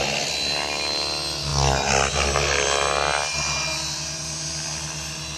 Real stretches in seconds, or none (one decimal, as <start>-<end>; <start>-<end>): 0.0-5.4